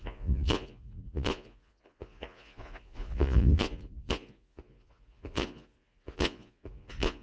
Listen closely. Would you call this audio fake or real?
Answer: fake